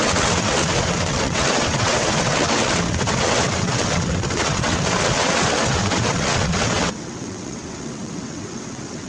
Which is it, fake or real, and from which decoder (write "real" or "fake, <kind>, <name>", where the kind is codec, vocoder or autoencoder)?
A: fake, vocoder, WaveNeXt